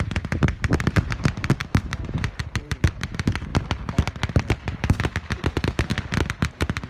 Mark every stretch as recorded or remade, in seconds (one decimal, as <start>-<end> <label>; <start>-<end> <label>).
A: 0.0-3.5 remade; 3.5-4.4 recorded; 4.4-5.9 remade; 5.9-6.4 recorded; 6.4-6.9 remade